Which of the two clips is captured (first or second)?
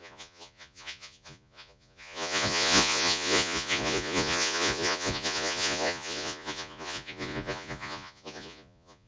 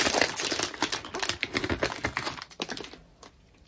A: second